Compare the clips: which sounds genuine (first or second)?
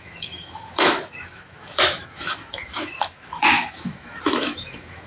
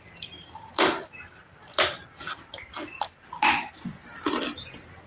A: second